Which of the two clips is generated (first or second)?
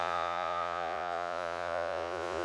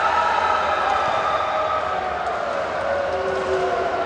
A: first